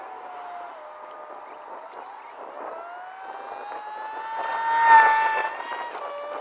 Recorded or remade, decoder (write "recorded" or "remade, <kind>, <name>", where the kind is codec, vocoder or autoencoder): recorded